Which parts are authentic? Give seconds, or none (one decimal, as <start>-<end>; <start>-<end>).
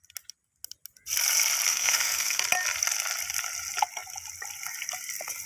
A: 0.0-1.7; 2.4-5.5